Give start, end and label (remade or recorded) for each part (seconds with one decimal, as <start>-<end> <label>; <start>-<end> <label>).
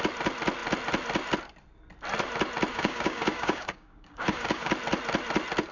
0.0-2.7 recorded; 2.7-4.7 remade; 4.7-5.7 recorded